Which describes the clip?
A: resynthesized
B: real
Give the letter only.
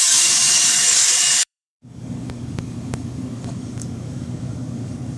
A